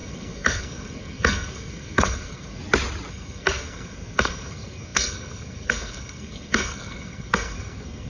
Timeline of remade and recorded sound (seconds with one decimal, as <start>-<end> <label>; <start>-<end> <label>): 0.0-2.6 remade; 2.6-3.1 recorded; 3.1-8.1 remade